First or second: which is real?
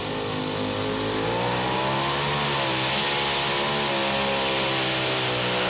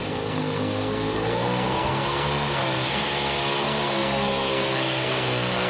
first